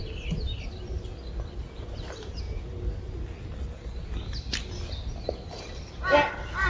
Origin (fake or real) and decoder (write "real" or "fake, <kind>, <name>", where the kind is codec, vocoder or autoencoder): real